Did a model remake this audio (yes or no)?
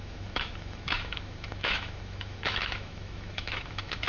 yes